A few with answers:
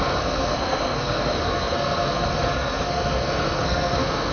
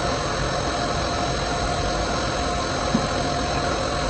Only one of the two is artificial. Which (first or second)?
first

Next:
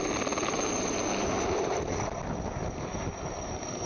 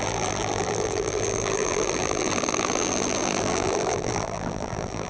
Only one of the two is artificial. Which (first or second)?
second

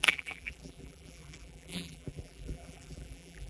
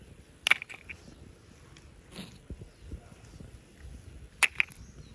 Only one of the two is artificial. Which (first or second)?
first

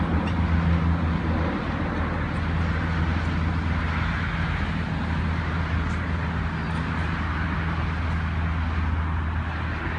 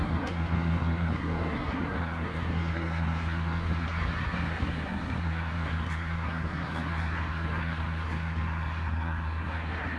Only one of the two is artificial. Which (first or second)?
second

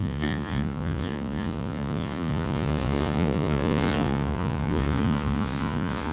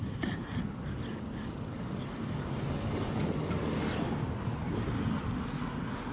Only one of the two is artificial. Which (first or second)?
first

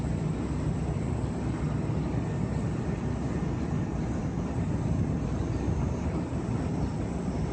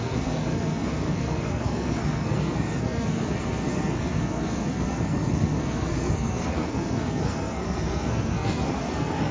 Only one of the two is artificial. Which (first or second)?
second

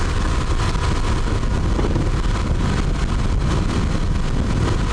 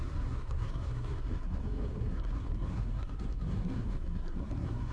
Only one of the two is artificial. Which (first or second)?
second